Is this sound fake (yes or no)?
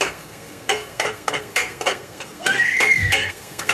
yes